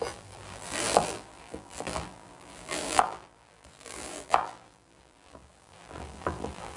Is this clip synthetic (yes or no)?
yes